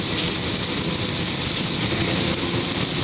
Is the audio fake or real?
real